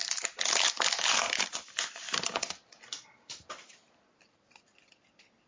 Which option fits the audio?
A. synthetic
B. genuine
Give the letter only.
B